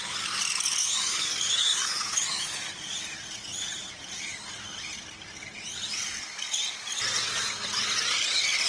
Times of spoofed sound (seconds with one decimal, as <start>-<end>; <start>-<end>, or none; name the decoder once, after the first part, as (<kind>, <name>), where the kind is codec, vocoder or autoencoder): 0.8-2.7 (autoencoder, DAC-VAE)